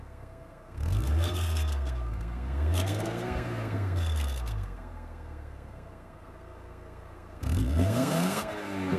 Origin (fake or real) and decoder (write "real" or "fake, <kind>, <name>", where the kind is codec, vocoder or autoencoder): fake, codec, SNAC